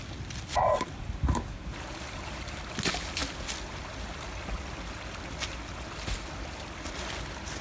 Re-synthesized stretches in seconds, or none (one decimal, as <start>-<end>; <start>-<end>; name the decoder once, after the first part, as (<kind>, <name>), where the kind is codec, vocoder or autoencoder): none